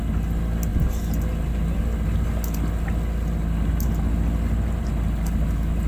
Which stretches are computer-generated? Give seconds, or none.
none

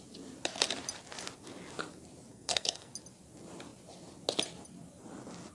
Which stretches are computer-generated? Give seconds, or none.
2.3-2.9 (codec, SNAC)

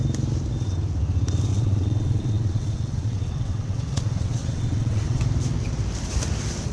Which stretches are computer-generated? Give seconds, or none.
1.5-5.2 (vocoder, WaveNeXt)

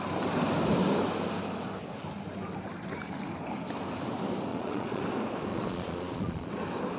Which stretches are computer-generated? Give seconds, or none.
4.5-5.0 (vocoder, Vocos); 5.5-6.5

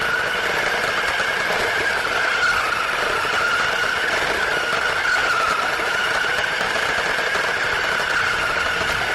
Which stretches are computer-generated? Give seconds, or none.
5.2-6.8 (vocoder, BigVGAN v2)